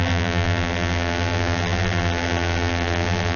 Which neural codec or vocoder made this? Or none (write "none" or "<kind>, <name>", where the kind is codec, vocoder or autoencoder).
vocoder, BigVGAN v2